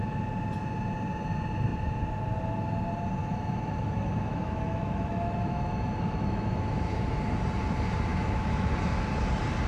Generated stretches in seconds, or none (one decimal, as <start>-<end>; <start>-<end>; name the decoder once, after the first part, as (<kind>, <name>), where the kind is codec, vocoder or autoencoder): 3.2-7.2 (autoencoder, DAC-VAE); 8.1-8.7